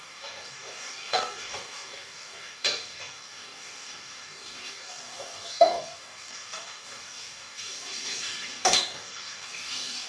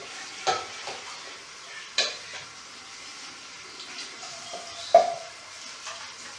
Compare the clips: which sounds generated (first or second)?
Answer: first